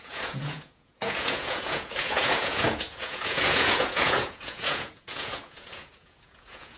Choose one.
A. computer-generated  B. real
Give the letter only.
A